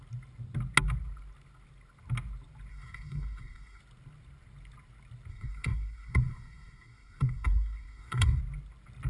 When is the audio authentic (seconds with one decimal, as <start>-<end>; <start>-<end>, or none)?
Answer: 0.0-2.7; 3.8-5.3; 8.4-9.1